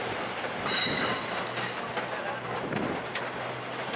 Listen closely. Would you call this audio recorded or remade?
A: recorded